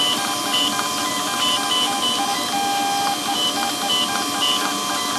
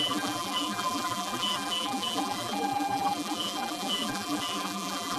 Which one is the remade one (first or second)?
second